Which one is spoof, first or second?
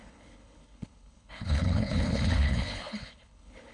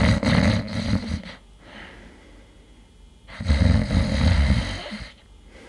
first